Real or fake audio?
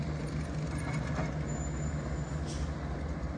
real